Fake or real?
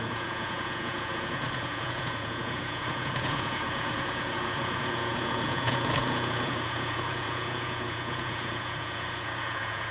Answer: fake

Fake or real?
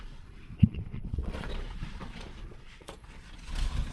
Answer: fake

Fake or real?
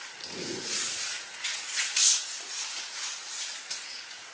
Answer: fake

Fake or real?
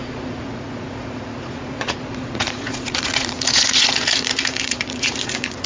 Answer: fake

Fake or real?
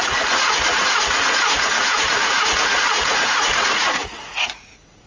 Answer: fake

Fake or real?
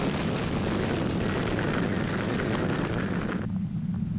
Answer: real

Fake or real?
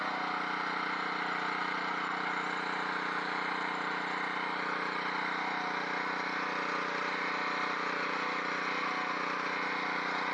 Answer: real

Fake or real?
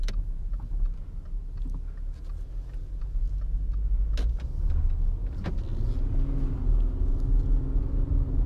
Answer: real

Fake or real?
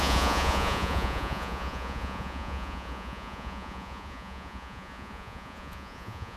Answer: fake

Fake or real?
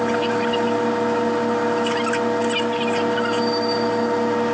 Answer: real